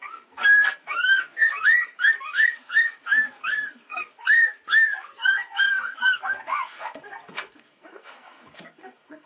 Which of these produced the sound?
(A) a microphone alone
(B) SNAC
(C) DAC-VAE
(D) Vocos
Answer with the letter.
B